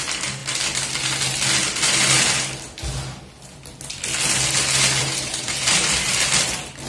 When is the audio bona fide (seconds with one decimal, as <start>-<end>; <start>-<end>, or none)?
0.0-5.0; 6.1-6.9